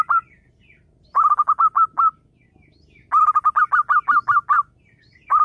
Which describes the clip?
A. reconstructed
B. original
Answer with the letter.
B